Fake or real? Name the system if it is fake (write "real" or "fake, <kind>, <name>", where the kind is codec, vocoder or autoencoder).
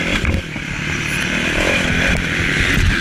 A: real